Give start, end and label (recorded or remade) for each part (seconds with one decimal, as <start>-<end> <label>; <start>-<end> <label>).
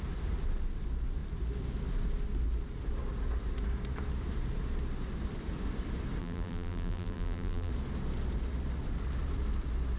0.0-6.2 recorded; 6.2-7.7 remade; 7.7-10.0 recorded